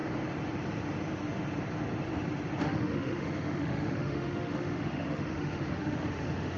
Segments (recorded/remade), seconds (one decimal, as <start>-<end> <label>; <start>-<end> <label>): 0.0-2.6 recorded; 2.6-6.6 remade

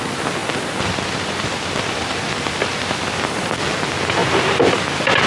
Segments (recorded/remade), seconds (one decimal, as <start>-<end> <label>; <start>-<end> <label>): 0.0-0.4 recorded; 0.4-3.6 remade; 3.6-4.2 recorded; 4.2-5.3 remade

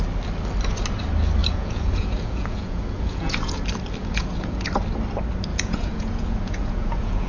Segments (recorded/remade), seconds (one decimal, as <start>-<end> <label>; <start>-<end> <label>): 0.0-1.4 recorded; 1.4-3.6 remade; 3.6-4.0 recorded; 4.0-4.7 remade; 4.7-5.5 recorded; 5.5-7.3 remade